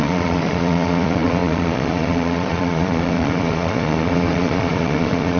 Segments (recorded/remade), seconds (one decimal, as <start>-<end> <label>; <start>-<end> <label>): 0.0-5.4 remade